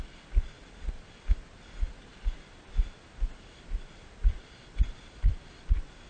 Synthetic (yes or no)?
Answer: no